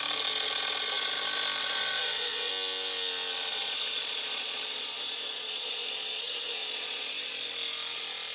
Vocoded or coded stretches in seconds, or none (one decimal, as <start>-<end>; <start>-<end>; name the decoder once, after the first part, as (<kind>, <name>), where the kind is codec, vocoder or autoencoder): 1.6-2.5 (vocoder, Vocos); 3.5-7.5